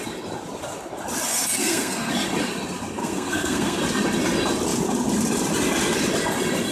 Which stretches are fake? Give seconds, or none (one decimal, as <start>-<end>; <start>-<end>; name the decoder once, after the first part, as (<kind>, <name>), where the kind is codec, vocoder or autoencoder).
1.3-2.1 (codec, SNAC); 3.0-3.8